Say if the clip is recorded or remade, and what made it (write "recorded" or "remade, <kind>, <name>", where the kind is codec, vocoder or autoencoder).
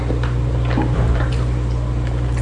recorded